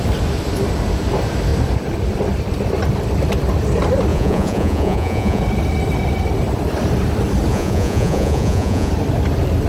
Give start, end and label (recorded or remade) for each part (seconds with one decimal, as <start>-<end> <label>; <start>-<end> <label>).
0.0-4.1 recorded; 4.1-5.4 remade; 5.4-7.5 recorded; 7.5-8.9 remade; 8.9-9.7 recorded